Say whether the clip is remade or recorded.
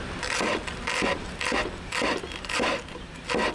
recorded